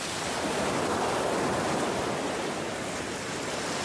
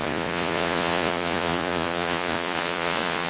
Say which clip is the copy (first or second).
second